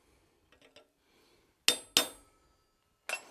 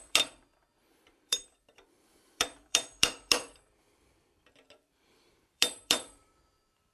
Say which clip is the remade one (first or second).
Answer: second